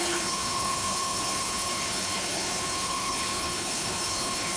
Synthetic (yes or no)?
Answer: yes